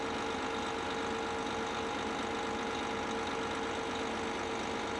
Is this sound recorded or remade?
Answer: recorded